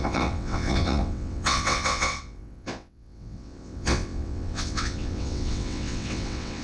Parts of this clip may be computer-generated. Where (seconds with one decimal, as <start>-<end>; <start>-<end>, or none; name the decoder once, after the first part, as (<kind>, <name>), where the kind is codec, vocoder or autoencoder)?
0.0-6.6 (vocoder, WaveNeXt)